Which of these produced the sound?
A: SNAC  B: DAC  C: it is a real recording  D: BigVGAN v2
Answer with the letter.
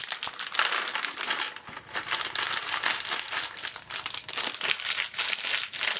C